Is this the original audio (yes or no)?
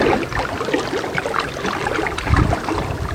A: yes